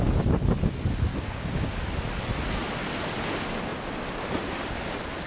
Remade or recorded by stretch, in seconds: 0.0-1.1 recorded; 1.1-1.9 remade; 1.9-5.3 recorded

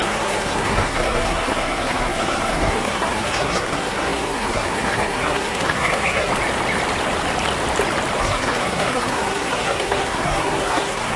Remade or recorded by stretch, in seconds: 0.0-6.3 remade; 6.3-8.2 recorded; 8.2-11.2 remade

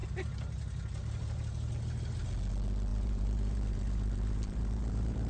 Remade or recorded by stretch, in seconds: 0.0-1.7 remade; 1.7-2.9 recorded; 2.9-5.3 remade